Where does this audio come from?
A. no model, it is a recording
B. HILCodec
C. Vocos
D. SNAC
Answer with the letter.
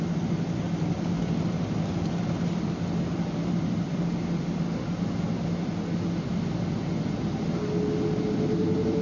A